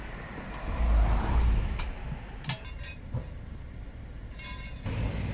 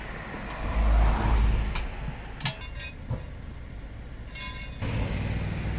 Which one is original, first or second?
second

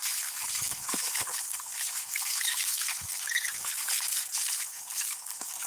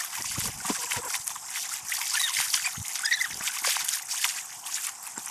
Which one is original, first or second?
second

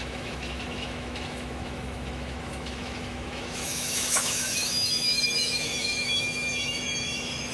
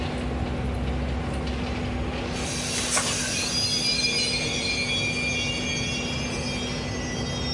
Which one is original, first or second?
second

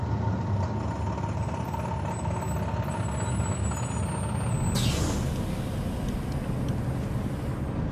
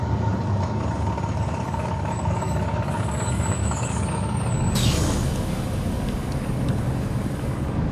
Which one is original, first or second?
first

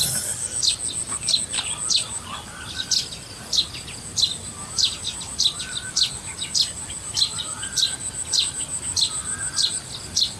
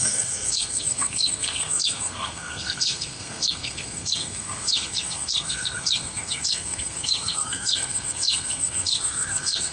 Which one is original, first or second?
first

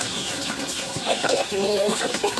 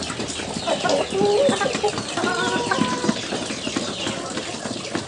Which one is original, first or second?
second